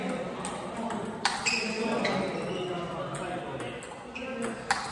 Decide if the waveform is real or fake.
real